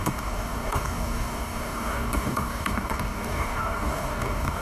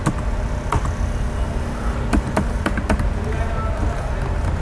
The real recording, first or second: second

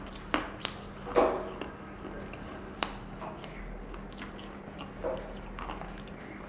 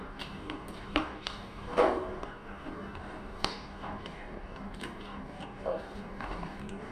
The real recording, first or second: first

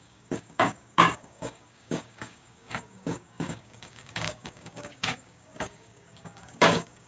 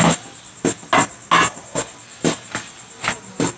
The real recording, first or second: second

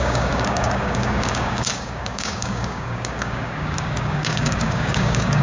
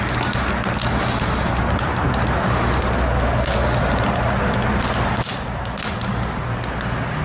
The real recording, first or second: second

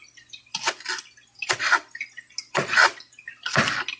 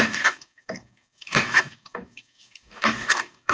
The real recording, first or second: first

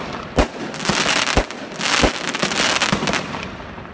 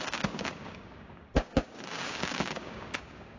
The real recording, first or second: first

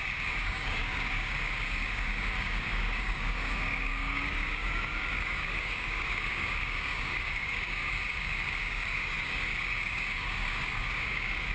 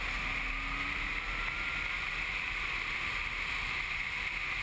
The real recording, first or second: second